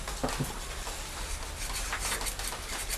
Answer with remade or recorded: recorded